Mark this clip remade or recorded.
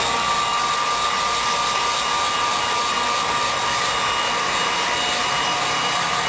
recorded